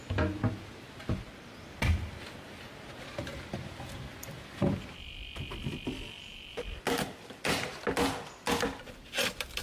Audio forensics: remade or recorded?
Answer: recorded